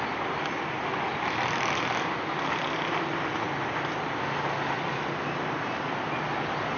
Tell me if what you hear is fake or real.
real